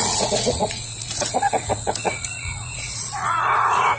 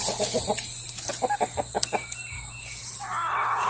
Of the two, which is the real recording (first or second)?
second